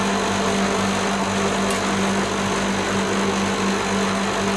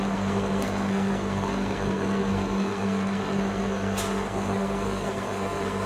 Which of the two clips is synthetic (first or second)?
second